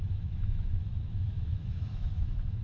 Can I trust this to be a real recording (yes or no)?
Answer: no